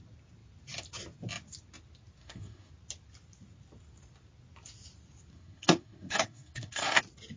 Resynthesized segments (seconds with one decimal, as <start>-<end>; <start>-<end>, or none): 2.2-2.7; 5.3-7.0